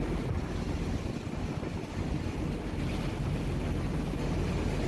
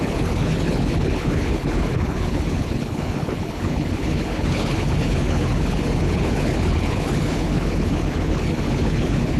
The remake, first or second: second